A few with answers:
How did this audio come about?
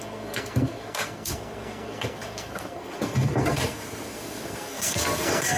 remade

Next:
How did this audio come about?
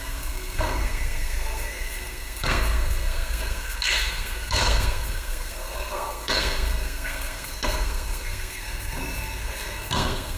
remade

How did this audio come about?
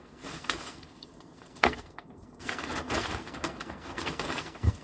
remade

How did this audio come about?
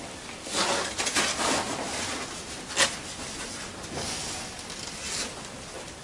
recorded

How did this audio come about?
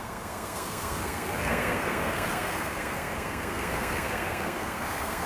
remade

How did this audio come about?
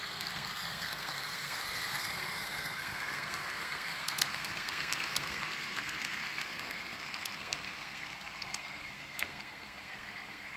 remade